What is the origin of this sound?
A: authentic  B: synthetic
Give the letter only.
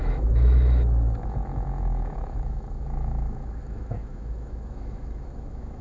B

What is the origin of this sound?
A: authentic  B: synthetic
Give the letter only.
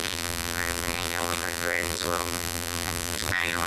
B